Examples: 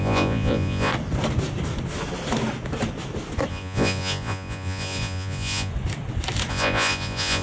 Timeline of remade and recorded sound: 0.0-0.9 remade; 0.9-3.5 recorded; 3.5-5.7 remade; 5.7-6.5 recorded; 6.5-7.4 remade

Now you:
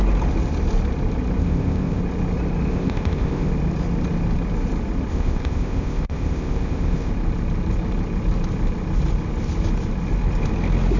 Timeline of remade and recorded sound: 0.0-1.4 recorded; 1.4-2.0 remade; 2.0-2.7 recorded; 2.7-3.5 remade; 3.5-5.1 recorded; 5.1-7.1 remade; 7.1-11.0 recorded

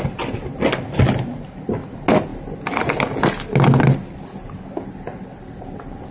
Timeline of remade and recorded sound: 0.0-6.1 recorded

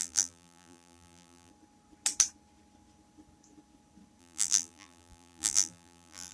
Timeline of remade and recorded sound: 0.0-1.5 remade; 1.5-4.2 recorded; 4.2-6.3 remade

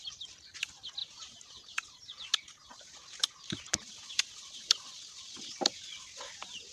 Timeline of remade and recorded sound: 0.0-1.0 recorded; 1.0-5.0 remade; 5.0-6.7 recorded

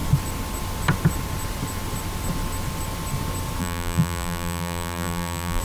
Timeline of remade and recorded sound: 0.0-3.6 recorded; 3.6-5.6 remade

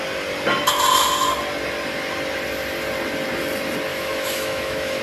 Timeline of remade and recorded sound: 0.0-3.9 recorded; 3.9-5.0 remade

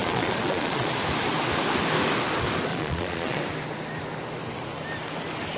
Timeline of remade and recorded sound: 0.0-0.9 remade; 0.9-2.7 recorded; 2.7-3.4 remade; 3.4-5.6 recorded